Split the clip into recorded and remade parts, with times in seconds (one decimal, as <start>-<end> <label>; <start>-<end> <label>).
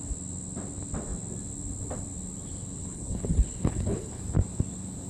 0.0-2.8 recorded; 2.8-4.2 remade; 4.2-5.1 recorded